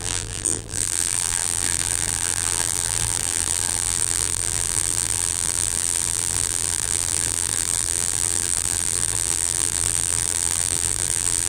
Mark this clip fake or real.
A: fake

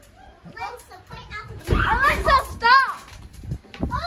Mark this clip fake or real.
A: fake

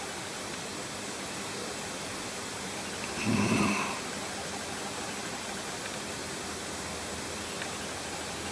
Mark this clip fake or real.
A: fake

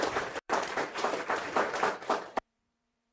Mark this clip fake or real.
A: fake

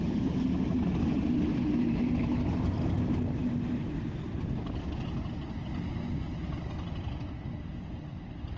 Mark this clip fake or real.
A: real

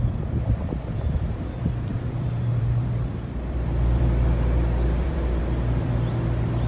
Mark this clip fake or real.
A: fake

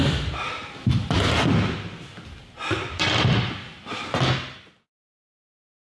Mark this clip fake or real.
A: real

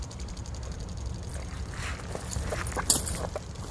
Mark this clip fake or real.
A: real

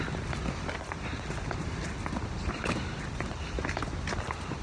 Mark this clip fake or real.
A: real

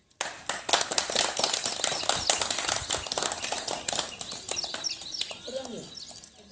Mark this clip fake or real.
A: real